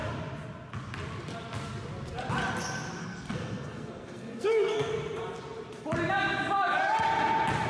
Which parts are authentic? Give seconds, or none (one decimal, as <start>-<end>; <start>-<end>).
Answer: 0.0-3.0; 4.9-7.7